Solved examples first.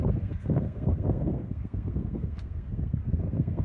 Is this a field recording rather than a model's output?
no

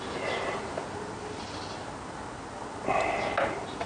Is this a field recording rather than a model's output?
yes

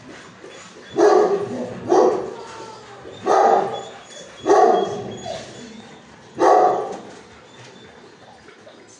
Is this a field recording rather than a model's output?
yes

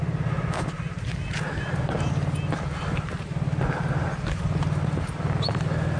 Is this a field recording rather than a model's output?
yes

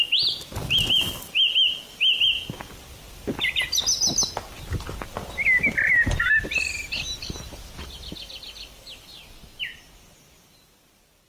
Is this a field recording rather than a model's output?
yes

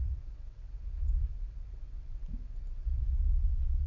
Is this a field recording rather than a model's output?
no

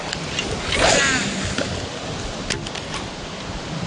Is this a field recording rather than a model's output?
yes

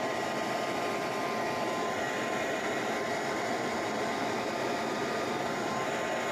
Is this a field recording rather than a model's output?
yes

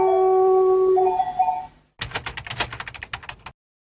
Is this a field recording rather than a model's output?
yes